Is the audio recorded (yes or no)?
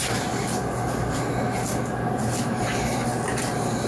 yes